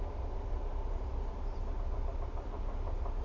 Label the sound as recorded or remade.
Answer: recorded